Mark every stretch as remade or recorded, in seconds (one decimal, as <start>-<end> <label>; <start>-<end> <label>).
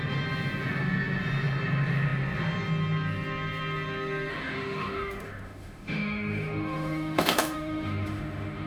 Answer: 0.0-4.3 recorded; 4.3-8.7 remade